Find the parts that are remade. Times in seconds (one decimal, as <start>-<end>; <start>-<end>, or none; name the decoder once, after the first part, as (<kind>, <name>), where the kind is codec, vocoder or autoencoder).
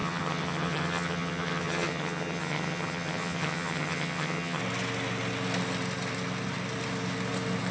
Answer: 0.0-4.6 (vocoder, HiFi-GAN)